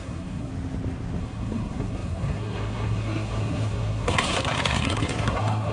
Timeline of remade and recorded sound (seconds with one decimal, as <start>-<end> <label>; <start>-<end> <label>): 0.0-0.5 remade; 0.5-1.2 recorded; 1.2-5.7 remade